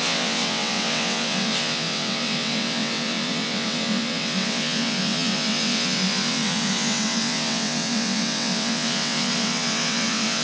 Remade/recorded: remade